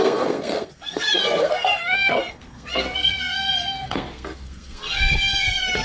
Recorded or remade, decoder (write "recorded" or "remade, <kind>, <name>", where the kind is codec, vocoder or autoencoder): remade, codec, SNAC